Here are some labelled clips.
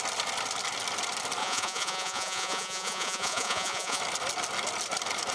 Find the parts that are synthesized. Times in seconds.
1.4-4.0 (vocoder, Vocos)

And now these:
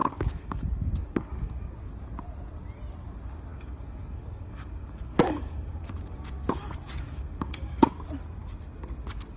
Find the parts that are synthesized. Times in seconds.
0.0-1.6 (codec, DAC); 3.5-6.0; 6.6-7.9

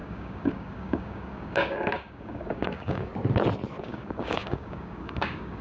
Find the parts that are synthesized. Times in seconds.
0.0-3.1 (codec, DAC); 3.8-5.6

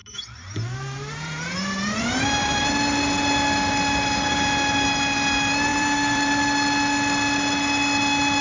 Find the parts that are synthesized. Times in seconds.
0.0-2.7 (vocoder, BigVGAN v2); 5.7-6.4